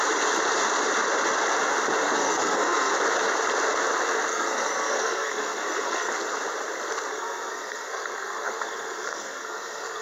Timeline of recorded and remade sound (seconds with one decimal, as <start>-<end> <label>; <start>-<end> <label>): 0.0-2.0 recorded; 2.0-2.9 remade; 2.9-4.3 recorded; 4.3-6.1 remade; 6.1-7.1 recorded; 7.1-10.0 remade